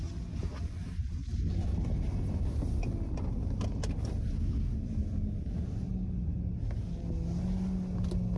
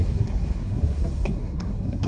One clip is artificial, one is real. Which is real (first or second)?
first